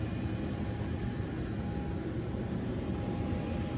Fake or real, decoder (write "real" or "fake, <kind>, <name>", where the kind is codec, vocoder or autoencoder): real